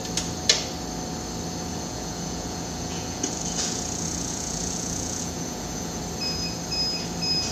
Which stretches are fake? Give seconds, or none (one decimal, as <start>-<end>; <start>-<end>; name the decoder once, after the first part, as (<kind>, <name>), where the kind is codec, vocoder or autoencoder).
1.7-6.0 (vocoder, Vocos)